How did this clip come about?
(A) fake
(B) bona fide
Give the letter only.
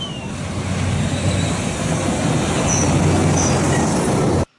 B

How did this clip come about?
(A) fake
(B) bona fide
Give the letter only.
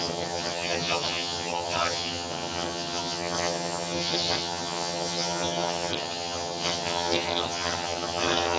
A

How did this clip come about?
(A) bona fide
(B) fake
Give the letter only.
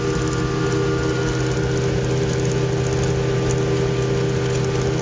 A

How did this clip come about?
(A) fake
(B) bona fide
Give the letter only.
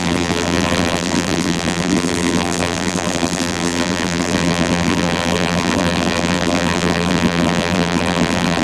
A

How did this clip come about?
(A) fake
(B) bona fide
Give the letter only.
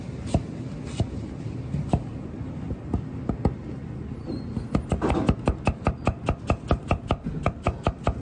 B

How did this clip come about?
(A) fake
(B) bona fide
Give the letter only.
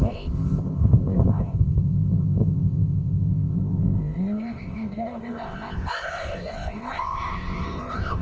A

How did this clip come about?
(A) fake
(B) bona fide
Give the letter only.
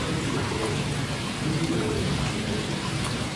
B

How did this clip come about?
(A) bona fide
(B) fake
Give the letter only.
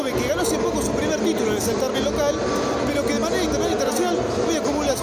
A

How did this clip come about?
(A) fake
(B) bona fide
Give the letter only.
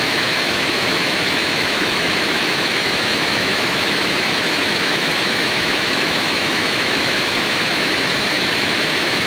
A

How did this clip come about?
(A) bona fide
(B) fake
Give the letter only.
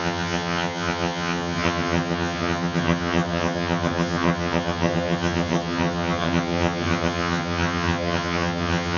B